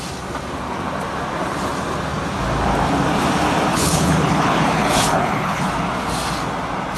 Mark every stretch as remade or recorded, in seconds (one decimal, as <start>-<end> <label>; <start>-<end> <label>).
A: 0.0-3.7 recorded; 3.7-5.7 remade; 5.7-7.0 recorded